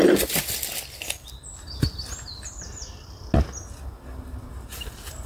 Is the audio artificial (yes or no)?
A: no